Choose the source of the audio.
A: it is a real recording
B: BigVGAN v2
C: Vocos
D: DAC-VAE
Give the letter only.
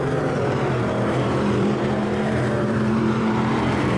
B